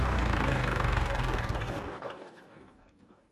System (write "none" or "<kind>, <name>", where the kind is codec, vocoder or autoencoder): codec, DAC